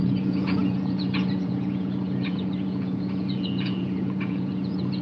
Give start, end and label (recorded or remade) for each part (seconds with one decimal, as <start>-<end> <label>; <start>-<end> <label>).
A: 0.0-5.0 remade